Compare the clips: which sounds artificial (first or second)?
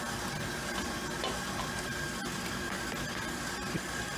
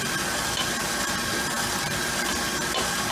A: second